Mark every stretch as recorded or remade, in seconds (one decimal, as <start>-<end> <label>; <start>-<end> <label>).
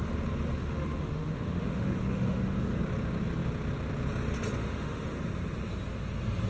0.0-0.6 recorded; 0.6-2.8 remade; 2.8-4.6 recorded; 4.6-5.2 remade; 5.2-6.5 recorded